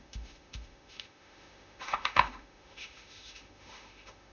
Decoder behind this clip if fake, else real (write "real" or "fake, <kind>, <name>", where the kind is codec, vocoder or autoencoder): fake, autoencoder, DAC-VAE